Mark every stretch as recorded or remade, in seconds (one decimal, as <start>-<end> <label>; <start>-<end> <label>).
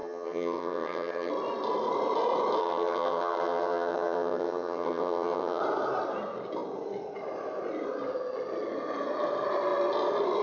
0.0-1.3 remade; 1.3-2.6 recorded; 2.6-5.6 remade; 5.6-10.4 recorded